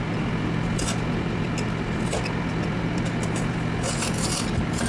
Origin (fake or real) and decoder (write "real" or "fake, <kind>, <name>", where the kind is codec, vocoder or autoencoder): real